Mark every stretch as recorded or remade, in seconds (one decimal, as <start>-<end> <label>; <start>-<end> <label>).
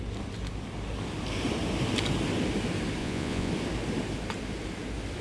0.0-3.0 recorded; 3.0-3.5 remade; 3.5-5.2 recorded